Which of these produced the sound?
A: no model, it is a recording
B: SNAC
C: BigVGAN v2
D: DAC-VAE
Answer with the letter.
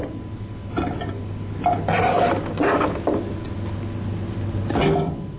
A